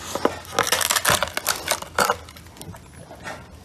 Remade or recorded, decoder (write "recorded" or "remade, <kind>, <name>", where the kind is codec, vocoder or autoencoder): recorded